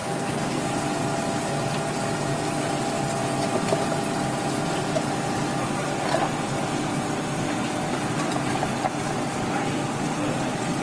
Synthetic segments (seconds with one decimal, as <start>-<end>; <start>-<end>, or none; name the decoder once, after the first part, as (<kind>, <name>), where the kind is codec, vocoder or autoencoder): 0.0-0.7 (codec, SNAC)